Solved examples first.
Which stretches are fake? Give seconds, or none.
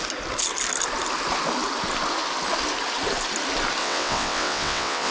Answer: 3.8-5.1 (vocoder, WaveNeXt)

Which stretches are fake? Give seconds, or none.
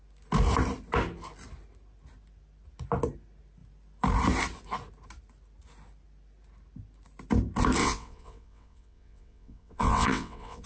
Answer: 7.8-10.7 (vocoder, WaveNeXt)